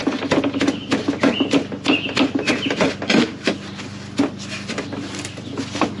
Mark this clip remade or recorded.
recorded